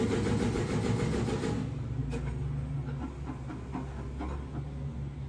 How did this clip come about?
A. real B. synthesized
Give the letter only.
A